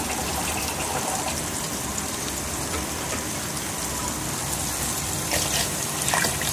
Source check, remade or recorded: recorded